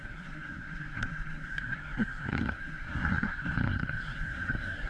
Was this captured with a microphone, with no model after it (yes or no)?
no